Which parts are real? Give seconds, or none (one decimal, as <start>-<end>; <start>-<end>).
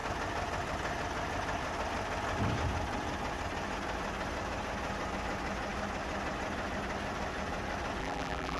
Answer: 0.0-8.0